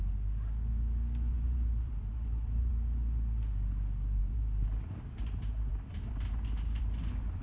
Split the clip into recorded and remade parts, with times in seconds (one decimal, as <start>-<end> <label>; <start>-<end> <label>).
0.0-1.3 recorded; 1.3-2.7 remade; 2.7-4.2 recorded; 4.2-5.0 remade; 5.0-7.4 recorded

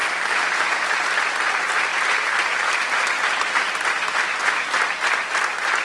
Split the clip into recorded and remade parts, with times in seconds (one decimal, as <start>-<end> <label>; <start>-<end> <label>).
0.0-1.1 remade; 1.1-5.8 recorded

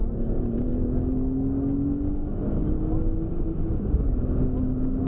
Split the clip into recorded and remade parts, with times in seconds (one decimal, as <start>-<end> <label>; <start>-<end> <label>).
0.0-0.7 remade; 0.7-5.1 recorded

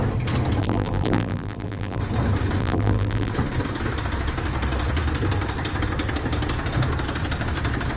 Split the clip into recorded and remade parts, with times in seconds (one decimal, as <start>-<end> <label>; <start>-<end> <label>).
0.0-0.6 recorded; 0.6-2.0 remade; 2.0-2.6 recorded; 2.6-3.3 remade; 3.3-8.0 recorded

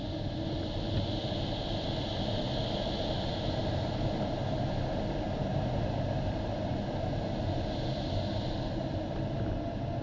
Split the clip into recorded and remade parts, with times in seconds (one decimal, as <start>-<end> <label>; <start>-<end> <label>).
0.0-5.5 recorded; 5.5-6.7 remade; 6.7-10.0 recorded

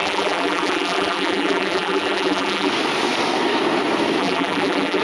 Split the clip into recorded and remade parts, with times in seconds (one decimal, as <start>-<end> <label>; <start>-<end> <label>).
0.0-2.7 remade; 2.7-4.2 recorded; 4.2-5.0 remade